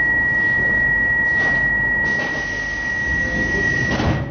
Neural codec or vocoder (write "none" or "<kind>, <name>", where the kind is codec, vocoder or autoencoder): none